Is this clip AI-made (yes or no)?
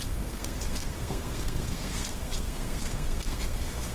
yes